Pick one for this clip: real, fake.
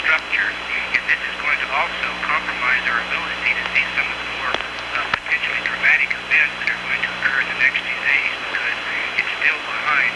real